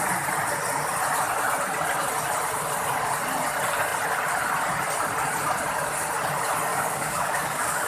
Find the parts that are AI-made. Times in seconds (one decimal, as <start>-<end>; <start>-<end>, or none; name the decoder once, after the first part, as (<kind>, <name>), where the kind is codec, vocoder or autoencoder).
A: 6.7-7.9 (codec, DAC)